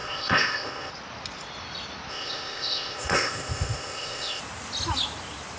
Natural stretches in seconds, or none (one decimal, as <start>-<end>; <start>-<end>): 0.9-2.1; 4.4-5.6